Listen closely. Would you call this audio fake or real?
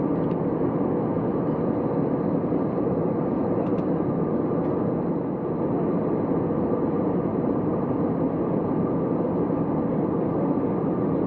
real